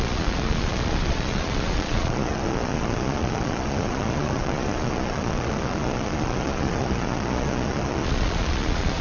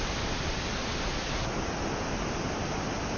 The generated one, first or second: first